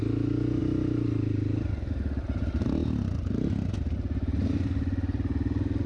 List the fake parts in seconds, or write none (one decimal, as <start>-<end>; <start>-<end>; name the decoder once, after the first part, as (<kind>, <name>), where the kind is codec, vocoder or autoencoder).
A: none